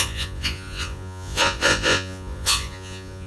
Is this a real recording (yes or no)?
no